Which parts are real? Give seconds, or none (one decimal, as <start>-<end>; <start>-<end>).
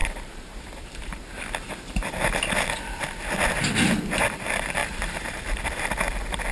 1.4-4.8; 5.4-6.5